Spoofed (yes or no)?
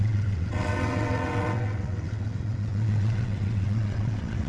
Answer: yes